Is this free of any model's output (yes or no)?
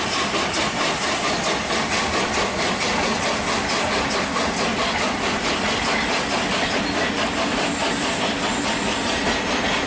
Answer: yes